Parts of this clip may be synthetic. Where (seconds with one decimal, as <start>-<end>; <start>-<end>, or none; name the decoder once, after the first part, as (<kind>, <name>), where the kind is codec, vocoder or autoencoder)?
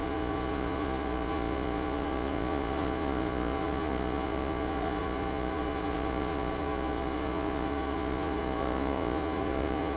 0.0-10.0 (vocoder, Vocos)